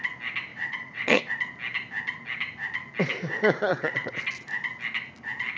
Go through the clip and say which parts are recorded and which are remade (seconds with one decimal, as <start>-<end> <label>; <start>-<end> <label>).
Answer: 0.0-0.5 recorded; 0.5-1.3 remade; 1.3-3.7 recorded; 3.7-4.2 remade; 4.2-5.6 recorded